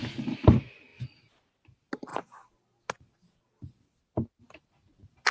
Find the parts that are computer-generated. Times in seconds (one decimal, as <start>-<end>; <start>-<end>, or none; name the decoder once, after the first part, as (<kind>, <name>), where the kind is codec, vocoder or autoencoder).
none

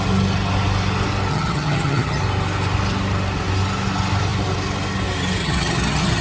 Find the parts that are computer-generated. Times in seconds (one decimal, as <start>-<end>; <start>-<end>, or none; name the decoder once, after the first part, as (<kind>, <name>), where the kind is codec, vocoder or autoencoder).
1.3-2.2 (vocoder, HiFi-GAN); 5.4-6.2

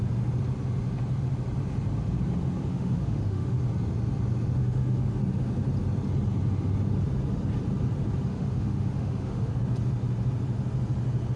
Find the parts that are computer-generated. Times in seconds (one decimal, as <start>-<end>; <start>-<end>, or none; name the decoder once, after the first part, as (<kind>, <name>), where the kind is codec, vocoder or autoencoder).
2.7-3.6 (autoencoder, DAC-VAE); 4.6-5.2; 8.3-9.5

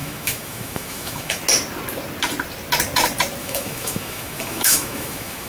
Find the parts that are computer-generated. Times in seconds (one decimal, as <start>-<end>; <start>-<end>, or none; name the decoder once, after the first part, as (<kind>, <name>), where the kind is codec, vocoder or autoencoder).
0.0-1.4 (autoencoder, DAC-VAE); 3.4-5.5

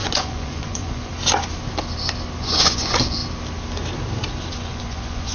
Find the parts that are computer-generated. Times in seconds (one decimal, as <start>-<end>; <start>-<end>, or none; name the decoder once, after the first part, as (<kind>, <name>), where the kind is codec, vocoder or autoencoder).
0.0-1.1 (vocoder, Vocos); 2.4-3.2; 4.5-5.3

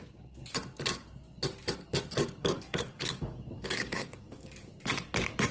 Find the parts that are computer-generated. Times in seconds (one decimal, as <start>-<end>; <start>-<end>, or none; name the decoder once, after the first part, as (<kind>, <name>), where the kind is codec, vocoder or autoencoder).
2.4-4.7 (codec, DAC)

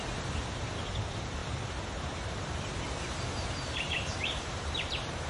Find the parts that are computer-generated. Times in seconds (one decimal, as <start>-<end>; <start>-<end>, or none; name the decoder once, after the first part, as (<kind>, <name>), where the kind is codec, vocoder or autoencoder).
0.0-5.3 (vocoder, BigVGAN v2)

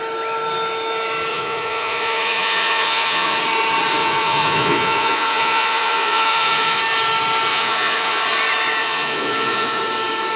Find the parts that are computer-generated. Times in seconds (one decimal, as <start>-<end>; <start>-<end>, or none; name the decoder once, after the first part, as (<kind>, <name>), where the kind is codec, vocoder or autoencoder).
1.3-3.4 (vocoder, Vocos); 4.0-6.8; 7.5-8.2; 8.8-9.8